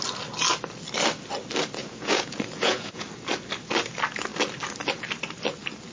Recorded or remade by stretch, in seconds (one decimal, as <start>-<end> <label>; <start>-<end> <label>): 0.0-1.8 recorded; 1.8-3.1 remade; 3.1-5.9 recorded